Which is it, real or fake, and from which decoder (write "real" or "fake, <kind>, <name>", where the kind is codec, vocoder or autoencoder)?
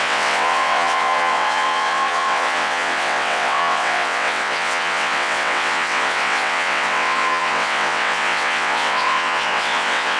fake, vocoder, WaveNeXt